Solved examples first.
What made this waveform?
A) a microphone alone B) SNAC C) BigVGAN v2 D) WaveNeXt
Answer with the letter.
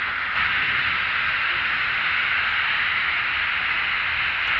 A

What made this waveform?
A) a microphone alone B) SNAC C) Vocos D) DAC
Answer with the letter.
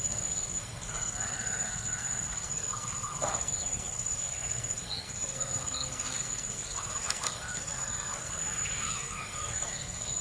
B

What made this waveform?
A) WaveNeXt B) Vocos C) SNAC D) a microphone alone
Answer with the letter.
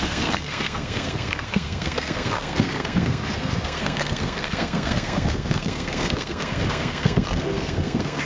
C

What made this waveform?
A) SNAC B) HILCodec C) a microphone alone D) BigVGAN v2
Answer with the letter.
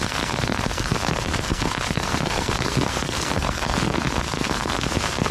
A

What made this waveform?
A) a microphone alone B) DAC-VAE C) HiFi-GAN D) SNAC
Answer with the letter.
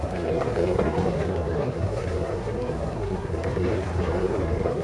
D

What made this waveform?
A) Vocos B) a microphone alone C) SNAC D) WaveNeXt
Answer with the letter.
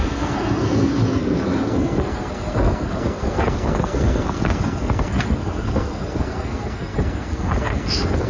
C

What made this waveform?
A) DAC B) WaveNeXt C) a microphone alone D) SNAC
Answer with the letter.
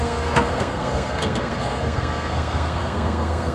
D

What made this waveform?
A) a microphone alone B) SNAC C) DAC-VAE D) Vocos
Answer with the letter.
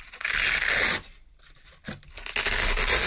A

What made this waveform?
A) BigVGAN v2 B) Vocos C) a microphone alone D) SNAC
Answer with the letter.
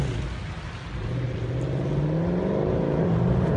C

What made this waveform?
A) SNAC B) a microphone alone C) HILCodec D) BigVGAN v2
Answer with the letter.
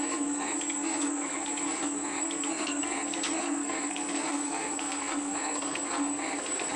A